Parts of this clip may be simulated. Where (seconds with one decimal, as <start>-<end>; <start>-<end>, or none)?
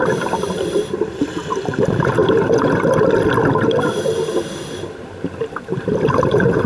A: 0.0-2.2; 6.2-6.7